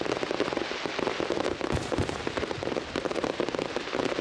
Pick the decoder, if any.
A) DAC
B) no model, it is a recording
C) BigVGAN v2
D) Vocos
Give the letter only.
B